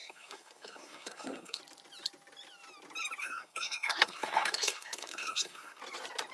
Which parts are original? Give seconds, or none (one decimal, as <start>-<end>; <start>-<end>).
1.6-3.2; 5.8-6.3